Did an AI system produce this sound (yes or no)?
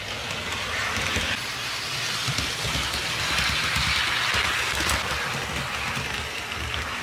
no